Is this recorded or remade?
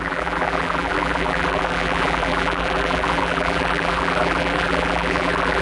remade